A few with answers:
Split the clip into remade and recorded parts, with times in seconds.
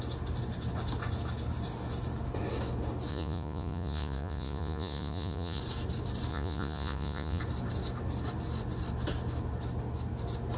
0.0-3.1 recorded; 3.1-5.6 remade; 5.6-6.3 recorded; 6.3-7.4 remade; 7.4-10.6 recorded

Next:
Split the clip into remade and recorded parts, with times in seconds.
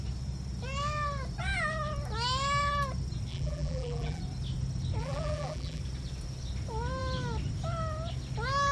0.0-3.3 recorded; 3.3-4.2 remade; 4.2-5.0 recorded; 5.0-5.8 remade; 5.8-8.7 recorded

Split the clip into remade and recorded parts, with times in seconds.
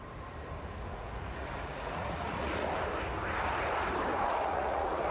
0.0-0.9 recorded; 0.9-2.7 remade; 2.7-4.1 recorded; 4.1-5.1 remade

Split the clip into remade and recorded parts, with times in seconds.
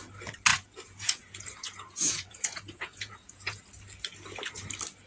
0.0-0.5 recorded; 0.5-3.6 remade; 3.6-5.1 recorded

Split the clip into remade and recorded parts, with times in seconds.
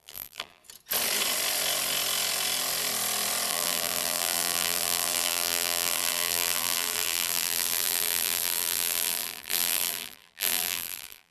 0.0-0.6 remade; 0.6-3.5 recorded; 3.5-11.3 remade